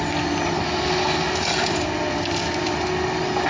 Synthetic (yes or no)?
no